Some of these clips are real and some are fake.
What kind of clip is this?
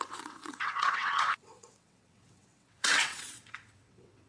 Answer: fake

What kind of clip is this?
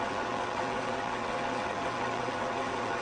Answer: fake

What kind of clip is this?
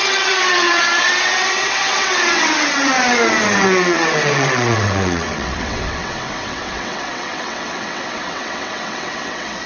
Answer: fake